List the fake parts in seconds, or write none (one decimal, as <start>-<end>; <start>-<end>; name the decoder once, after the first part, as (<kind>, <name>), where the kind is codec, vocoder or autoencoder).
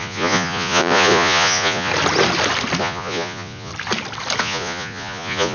0.0-1.9 (vocoder, Vocos); 2.8-3.7; 4.4-5.5